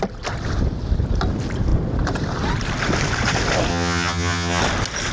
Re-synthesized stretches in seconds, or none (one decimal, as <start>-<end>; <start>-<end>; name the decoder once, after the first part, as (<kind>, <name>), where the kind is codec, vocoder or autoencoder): 3.7-4.6 (vocoder, HiFi-GAN)